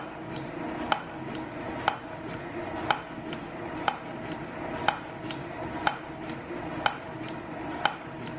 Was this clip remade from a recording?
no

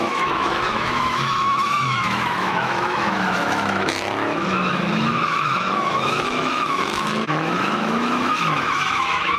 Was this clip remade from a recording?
yes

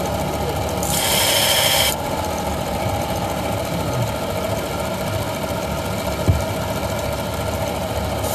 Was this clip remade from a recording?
no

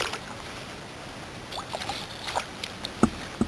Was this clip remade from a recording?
no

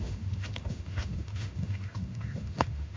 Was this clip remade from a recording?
yes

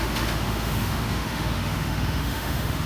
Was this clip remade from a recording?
yes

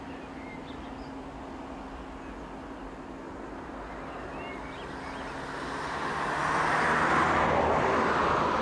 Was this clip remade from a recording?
no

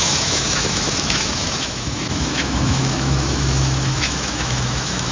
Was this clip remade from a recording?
yes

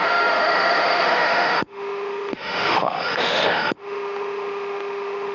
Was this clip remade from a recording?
yes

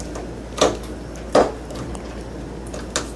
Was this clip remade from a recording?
no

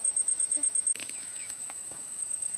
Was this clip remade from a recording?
yes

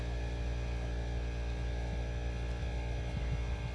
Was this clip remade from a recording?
no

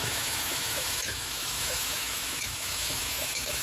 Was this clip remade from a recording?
yes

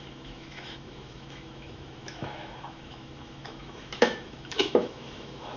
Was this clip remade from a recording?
yes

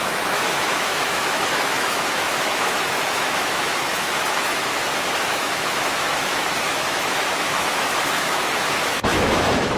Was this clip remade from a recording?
yes